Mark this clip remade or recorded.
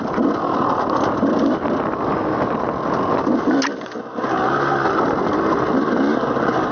recorded